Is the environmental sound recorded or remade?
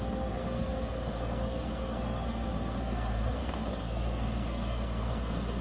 remade